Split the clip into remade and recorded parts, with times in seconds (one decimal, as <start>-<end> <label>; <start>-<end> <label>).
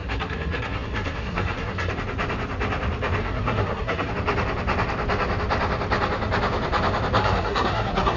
0.0-1.9 remade; 1.9-3.2 recorded; 3.2-4.1 remade; 4.1-7.2 recorded; 7.2-8.2 remade